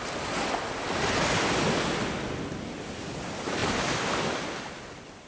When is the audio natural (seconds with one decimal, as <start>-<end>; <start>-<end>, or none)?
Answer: 0.0-5.3